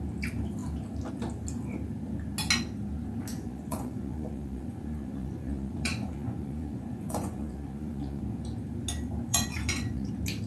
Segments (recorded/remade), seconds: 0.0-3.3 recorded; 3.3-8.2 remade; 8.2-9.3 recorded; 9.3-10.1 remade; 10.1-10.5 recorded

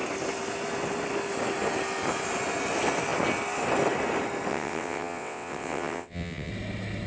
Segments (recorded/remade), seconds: 0.0-4.5 recorded; 4.5-6.5 remade; 6.5-7.1 recorded

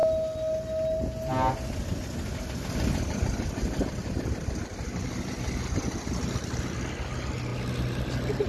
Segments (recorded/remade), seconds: 0.0-8.5 recorded

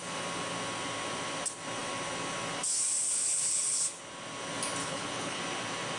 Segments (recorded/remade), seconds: 0.0-3.0 recorded; 3.0-4.0 remade; 4.0-4.8 recorded; 4.8-5.4 remade; 5.4-6.0 recorded

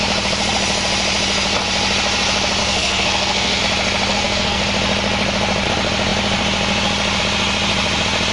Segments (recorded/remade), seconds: 0.0-2.6 recorded; 2.6-3.6 remade; 3.6-4.1 recorded; 4.1-4.6 remade; 4.6-8.3 recorded

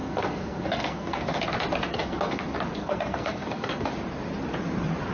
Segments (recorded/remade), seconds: 0.0-1.4 remade; 1.4-1.9 recorded; 1.9-2.4 remade; 2.4-2.8 recorded; 2.8-3.9 remade; 3.9-5.1 recorded

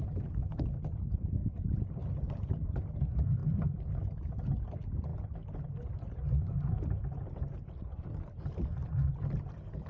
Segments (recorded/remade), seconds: 0.0-9.9 recorded

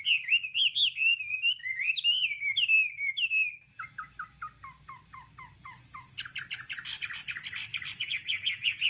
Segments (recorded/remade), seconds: 0.0-7.7 recorded; 7.7-8.9 remade